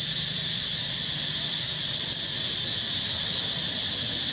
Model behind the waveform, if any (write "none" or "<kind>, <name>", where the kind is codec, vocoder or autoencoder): none